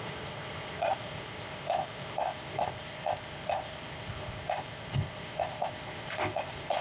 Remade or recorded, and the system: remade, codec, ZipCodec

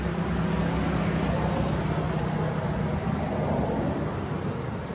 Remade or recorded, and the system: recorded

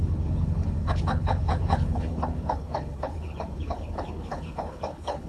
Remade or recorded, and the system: remade, codec, HILCodec